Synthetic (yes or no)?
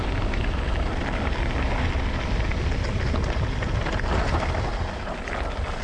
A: no